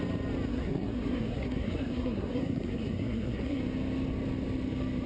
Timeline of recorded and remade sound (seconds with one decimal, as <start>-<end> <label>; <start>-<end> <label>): 0.0-0.5 recorded; 0.5-3.6 remade; 3.6-5.1 recorded

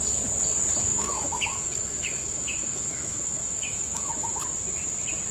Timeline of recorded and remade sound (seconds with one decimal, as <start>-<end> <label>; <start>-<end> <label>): 0.0-0.9 recorded; 0.9-4.1 remade; 4.1-5.3 recorded

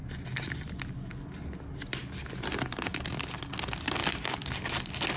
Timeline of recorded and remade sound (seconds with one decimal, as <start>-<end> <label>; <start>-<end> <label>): 0.0-4.0 recorded; 4.0-4.7 remade; 4.7-5.2 recorded

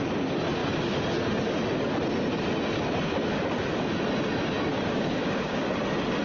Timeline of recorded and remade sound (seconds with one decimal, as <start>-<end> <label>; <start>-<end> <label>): 0.0-4.7 recorded; 4.7-5.7 remade; 5.7-6.2 recorded